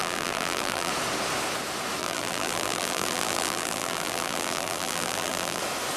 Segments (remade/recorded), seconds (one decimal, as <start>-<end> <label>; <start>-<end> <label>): 0.0-0.9 remade; 0.9-2.0 recorded; 2.0-5.6 remade; 5.6-6.0 recorded